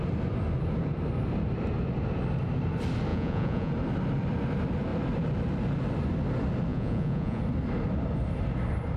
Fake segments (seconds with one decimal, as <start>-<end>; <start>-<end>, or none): 3.1-3.7; 6.7-7.4